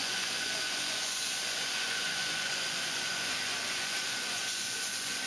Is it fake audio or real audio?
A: fake